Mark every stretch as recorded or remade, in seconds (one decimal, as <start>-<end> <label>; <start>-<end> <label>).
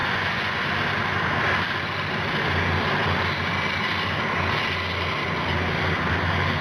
0.0-0.6 remade; 0.6-6.6 recorded